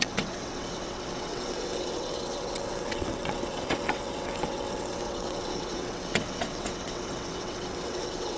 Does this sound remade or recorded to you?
remade